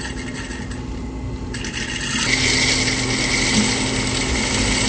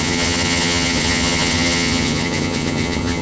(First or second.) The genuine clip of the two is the first